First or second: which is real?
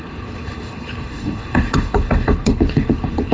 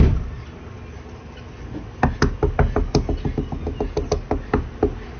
second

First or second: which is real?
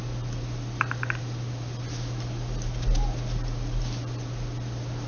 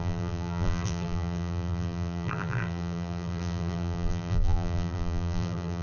first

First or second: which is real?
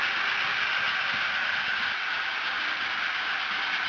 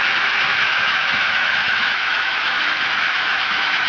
first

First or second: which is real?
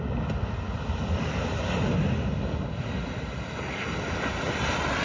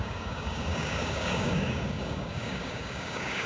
first